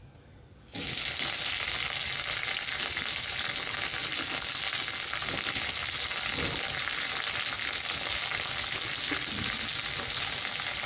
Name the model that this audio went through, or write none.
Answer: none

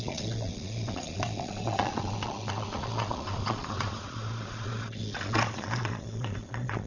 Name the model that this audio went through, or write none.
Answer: vocoder, Vocos